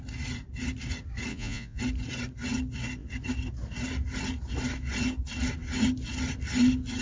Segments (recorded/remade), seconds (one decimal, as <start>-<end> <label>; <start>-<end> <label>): 0.0-1.3 recorded; 1.3-1.8 remade; 1.8-7.0 recorded